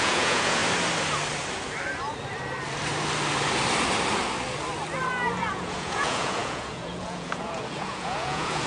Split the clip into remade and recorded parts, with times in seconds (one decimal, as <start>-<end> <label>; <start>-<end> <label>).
0.0-0.6 remade; 0.6-5.5 recorded; 5.5-8.7 remade